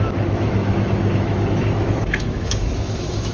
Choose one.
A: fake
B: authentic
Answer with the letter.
A